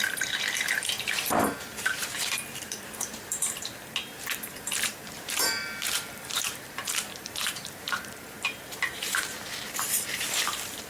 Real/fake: fake